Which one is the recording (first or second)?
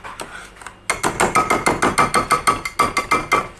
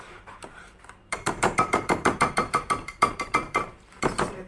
first